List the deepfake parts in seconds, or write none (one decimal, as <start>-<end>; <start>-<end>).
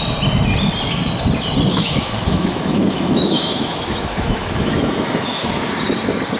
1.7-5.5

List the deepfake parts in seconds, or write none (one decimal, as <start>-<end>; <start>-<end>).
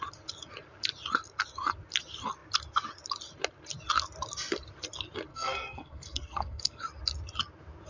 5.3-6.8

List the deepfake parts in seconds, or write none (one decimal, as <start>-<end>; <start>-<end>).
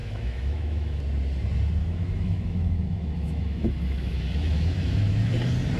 0.0-1.0; 1.8-5.3